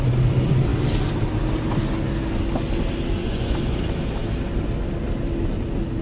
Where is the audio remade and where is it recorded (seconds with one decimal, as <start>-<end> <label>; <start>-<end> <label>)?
0.0-3.2 recorded; 3.2-3.8 remade; 3.8-6.0 recorded